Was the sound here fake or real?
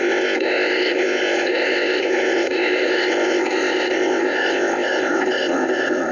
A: fake